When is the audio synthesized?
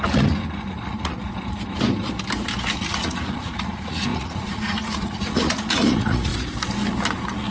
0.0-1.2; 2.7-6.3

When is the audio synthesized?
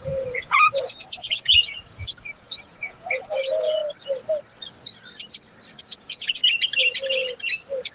0.0-3.8; 5.8-6.4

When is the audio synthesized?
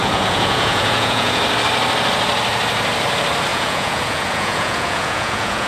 0.0-1.4; 3.5-5.7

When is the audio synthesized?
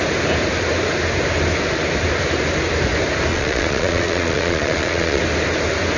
3.3-5.2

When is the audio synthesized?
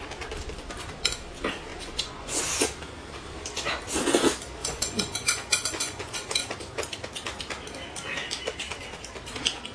1.7-2.4; 4.6-6.5